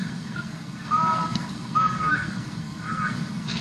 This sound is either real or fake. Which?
fake